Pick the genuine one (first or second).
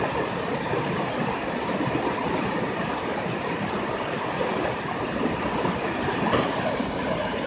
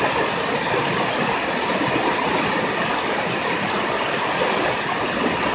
second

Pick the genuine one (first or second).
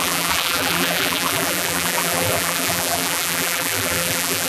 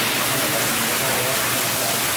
second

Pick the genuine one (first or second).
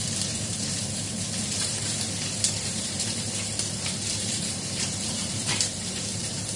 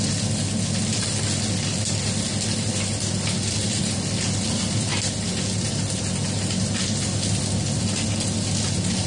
second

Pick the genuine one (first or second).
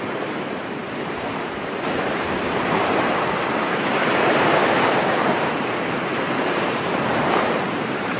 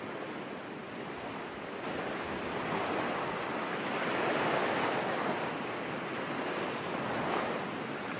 second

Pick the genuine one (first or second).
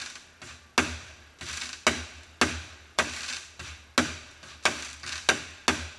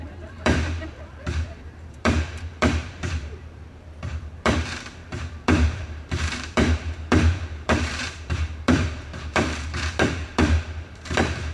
first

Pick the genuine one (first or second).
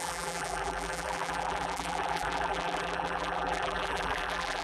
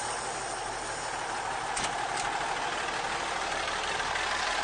second